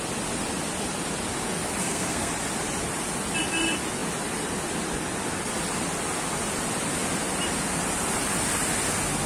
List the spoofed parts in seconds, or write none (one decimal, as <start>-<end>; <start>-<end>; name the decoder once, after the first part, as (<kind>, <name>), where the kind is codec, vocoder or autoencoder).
1.8-2.3 (codec, SNAC)